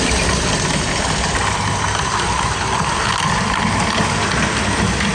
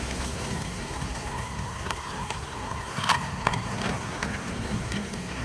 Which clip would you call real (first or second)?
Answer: first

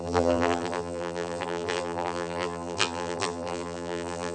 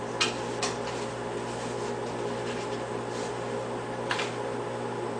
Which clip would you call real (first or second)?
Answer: second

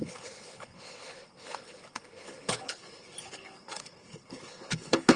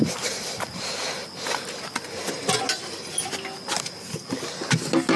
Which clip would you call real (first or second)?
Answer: second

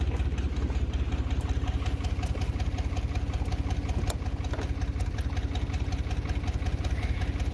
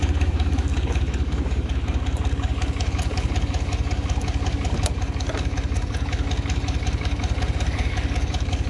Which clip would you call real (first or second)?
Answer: first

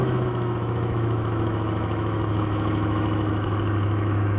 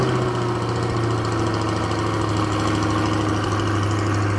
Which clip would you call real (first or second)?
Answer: second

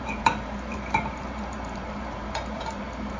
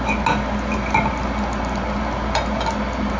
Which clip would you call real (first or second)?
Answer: second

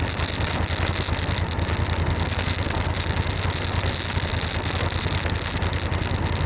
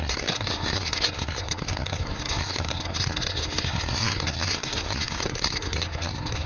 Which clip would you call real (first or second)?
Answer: first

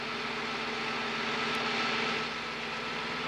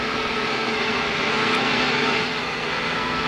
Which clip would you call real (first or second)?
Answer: first